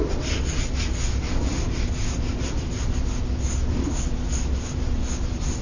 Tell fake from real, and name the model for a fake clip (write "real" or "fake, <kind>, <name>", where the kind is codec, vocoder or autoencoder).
real